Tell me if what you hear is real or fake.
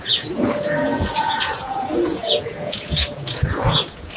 fake